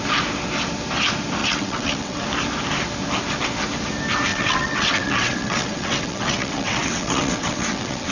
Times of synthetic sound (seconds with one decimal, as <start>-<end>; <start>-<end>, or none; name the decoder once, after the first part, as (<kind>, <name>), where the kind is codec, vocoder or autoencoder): 1.4-2.2 (vocoder, WaveNeXt); 4.3-8.1